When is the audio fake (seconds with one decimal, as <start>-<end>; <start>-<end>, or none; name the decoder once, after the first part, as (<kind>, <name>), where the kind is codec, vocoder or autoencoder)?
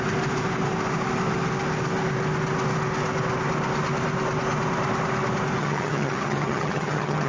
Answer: 5.6-7.3 (vocoder, HiFi-GAN)